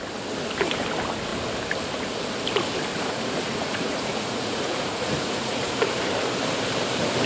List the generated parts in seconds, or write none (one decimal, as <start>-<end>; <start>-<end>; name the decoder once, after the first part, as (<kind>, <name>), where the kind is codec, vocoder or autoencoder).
2.9-5.8 (vocoder, Vocos)